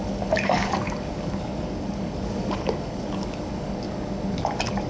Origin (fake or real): fake